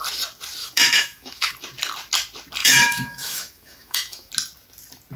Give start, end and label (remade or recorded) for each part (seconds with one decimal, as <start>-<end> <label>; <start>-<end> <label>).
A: 0.0-0.6 recorded; 0.6-1.5 remade; 1.5-2.6 recorded; 2.6-4.3 remade; 4.3-5.2 recorded